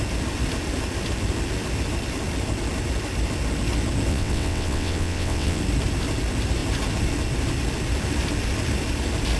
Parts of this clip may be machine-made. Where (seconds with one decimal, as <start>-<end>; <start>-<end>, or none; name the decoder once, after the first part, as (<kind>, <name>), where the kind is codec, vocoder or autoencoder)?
4.1-5.6 (vocoder, WaveNeXt)